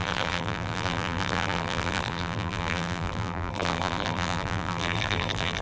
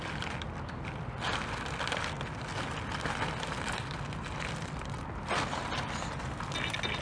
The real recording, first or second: second